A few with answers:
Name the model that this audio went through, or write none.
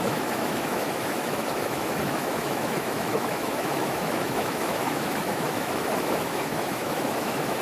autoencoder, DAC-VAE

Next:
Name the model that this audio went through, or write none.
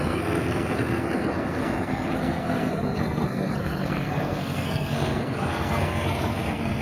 codec, SNAC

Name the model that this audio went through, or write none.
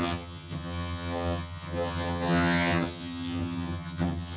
vocoder, HiFi-GAN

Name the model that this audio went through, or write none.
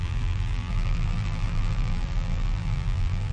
vocoder, BigVGAN v2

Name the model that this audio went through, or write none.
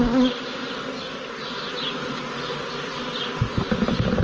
none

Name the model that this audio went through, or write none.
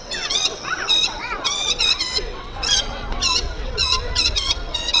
vocoder, WaveNeXt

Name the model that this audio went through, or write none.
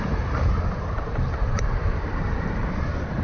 vocoder, BigVGAN v2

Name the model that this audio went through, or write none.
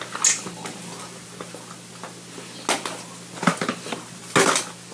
none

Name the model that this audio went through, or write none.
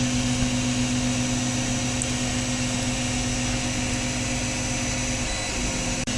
none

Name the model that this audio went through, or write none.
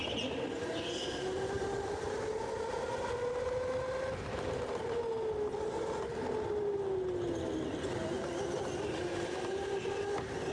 none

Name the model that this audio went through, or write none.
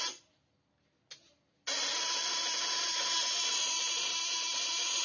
none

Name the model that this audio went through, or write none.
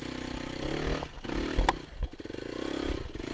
none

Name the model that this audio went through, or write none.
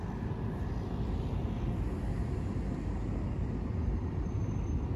none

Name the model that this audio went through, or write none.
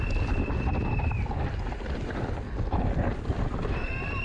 vocoder, BigVGAN v2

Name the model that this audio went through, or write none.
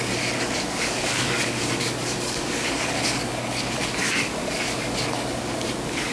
codec, DAC